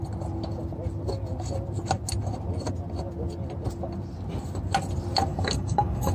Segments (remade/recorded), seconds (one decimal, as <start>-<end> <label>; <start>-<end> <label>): 0.0-5.3 recorded; 5.3-6.1 remade